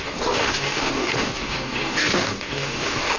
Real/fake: fake